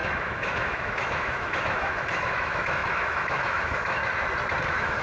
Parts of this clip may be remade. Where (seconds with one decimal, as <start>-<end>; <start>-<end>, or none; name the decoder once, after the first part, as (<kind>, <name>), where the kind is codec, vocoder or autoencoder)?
0.0-4.0 (autoencoder, DAC-VAE); 4.6-5.0